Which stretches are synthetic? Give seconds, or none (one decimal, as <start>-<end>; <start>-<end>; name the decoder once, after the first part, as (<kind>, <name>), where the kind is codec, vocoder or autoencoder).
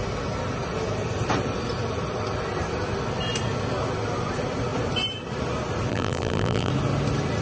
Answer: 5.9-6.7 (vocoder, BigVGAN v2)